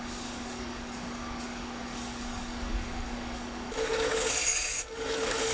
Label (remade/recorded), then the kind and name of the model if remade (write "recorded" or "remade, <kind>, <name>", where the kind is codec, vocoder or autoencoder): remade, codec, DAC